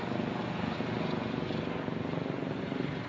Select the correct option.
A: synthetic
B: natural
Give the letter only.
B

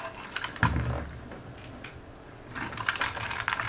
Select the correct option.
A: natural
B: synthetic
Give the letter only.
A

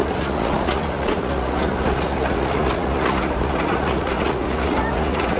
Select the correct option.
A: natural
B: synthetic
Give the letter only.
B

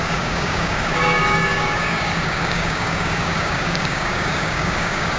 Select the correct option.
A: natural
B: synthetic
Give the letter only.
B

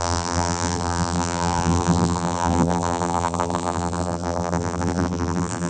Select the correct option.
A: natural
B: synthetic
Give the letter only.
B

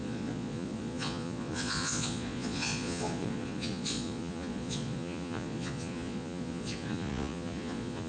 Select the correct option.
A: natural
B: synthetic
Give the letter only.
B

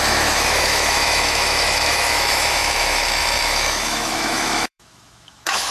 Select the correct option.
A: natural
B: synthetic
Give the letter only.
B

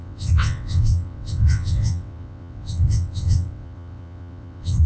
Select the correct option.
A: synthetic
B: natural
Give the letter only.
A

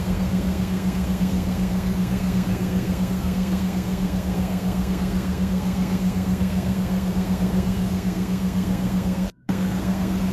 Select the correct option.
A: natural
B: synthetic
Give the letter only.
B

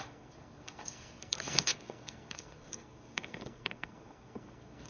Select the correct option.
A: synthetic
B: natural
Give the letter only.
A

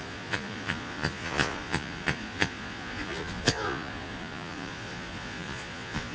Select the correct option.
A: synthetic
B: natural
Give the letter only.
A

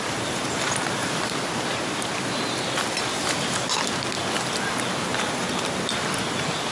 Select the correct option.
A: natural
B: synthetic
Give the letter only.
A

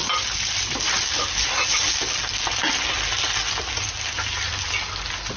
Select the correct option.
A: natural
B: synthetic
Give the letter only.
A